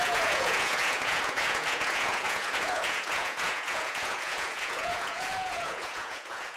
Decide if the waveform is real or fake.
fake